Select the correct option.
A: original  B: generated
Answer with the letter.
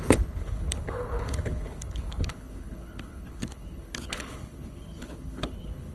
B